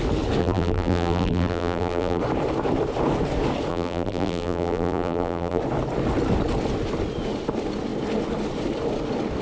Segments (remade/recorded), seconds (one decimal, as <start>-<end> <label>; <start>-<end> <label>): 0.0-0.4 recorded; 0.4-2.2 remade; 2.2-3.7 recorded; 3.7-5.6 remade; 5.6-9.4 recorded